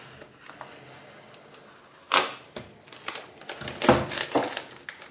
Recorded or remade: recorded